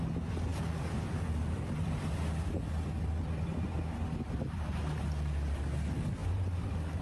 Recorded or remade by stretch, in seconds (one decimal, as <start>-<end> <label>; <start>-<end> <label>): 0.0-0.5 recorded; 0.5-4.7 remade; 4.7-6.2 recorded; 6.2-7.0 remade